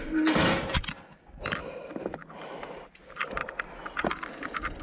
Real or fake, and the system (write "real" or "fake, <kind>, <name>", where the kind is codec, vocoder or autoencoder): real